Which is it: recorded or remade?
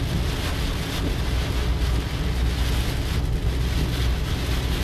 recorded